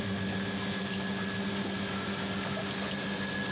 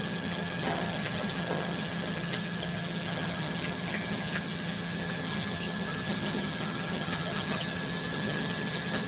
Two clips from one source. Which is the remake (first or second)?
second